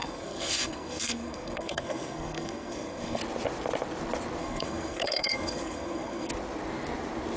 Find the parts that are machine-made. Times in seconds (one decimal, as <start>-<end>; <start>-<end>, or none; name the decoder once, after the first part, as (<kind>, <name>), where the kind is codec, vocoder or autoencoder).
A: 0.0-3.2 (codec, SNAC); 4.4-6.3